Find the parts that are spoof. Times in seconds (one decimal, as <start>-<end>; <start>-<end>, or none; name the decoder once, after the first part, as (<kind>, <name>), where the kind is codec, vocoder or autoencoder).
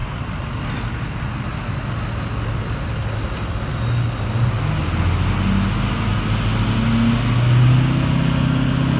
none